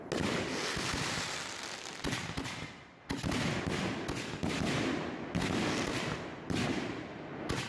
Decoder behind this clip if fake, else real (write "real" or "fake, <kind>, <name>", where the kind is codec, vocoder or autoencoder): real